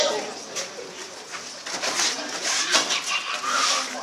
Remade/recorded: recorded